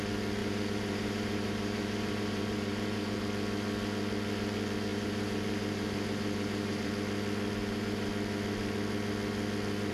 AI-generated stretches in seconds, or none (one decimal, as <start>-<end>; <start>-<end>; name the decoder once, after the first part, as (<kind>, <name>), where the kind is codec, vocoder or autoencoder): 0.4-3.2 (vocoder, BigVGAN v2); 4.9-6.9; 7.6-8.1